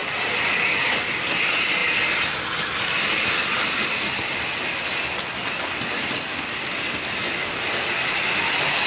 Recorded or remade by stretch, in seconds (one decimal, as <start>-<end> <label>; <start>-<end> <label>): 0.0-1.1 remade; 1.1-8.9 recorded